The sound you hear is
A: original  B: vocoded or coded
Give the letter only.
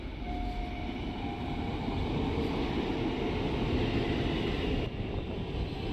A